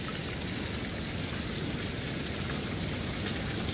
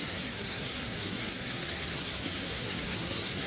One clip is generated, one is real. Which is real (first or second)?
first